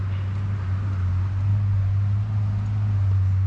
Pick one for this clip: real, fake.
real